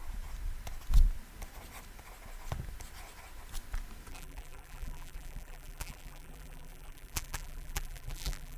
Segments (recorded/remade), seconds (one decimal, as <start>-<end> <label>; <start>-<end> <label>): 0.0-4.1 recorded; 4.1-8.6 remade